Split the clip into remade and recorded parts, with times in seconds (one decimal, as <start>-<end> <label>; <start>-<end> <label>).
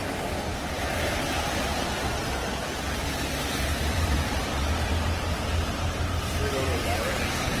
0.0-2.6 recorded; 2.6-6.1 remade; 6.1-7.6 recorded